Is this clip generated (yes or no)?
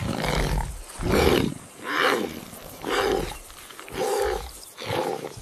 no